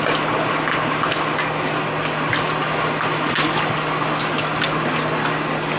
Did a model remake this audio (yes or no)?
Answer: no